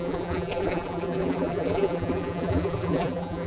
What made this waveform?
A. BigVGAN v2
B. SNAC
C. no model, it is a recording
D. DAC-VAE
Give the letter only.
A